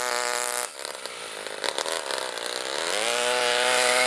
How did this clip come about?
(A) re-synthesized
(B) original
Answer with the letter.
B